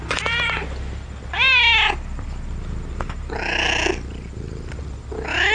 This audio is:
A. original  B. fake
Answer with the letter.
A